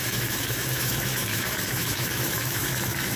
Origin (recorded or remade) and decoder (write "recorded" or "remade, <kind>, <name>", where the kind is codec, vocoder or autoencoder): remade, autoencoder, DAC-VAE